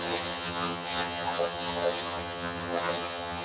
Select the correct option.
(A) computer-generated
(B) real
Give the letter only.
A